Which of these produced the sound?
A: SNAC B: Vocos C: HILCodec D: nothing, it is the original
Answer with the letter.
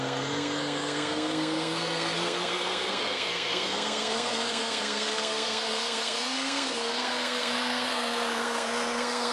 A